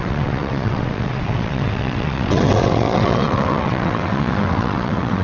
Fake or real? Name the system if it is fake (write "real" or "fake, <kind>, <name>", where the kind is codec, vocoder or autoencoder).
fake, vocoder, WaveNeXt